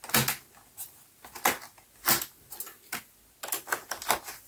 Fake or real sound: real